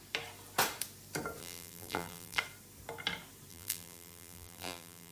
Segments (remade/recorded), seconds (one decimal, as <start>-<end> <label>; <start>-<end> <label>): 0.0-1.4 recorded; 1.4-2.4 remade; 2.4-3.5 recorded; 3.5-5.1 remade